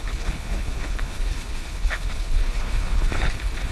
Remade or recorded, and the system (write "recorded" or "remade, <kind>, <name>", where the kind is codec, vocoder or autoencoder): remade, codec, HILCodec